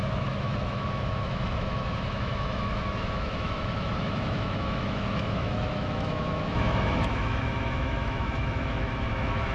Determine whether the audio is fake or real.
fake